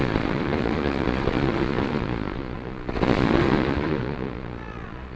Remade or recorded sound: remade